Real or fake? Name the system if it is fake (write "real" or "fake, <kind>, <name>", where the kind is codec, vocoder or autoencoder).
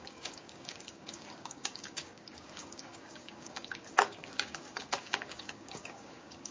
fake, codec, DAC